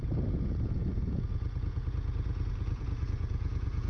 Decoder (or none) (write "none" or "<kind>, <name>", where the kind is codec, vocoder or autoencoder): vocoder, Vocos